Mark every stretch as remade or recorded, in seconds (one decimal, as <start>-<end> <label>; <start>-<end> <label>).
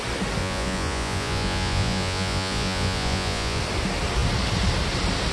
0.0-0.4 recorded; 0.4-3.6 remade; 3.6-5.3 recorded